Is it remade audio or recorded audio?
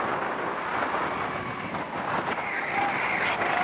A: recorded